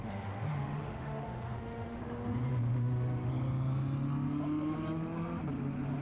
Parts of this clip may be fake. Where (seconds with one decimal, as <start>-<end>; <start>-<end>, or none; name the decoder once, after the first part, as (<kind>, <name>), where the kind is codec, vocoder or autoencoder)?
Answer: 0.0-2.0 (autoencoder, DAC-VAE); 2.5-3.3